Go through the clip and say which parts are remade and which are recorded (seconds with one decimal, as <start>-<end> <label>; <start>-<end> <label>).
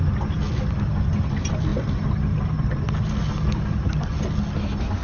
0.0-5.0 recorded